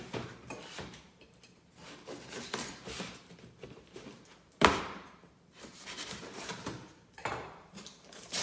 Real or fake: fake